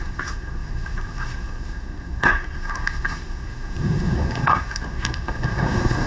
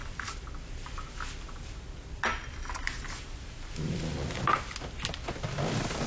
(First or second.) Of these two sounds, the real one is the second